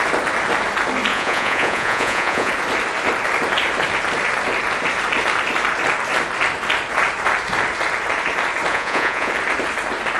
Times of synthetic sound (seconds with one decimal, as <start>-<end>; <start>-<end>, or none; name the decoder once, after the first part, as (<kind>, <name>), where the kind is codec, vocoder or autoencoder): 1.1-2.5 (vocoder, Vocos); 8.7-9.3